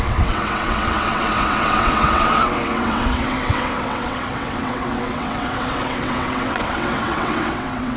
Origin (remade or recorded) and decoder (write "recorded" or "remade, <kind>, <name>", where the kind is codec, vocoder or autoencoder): remade, vocoder, WaveNeXt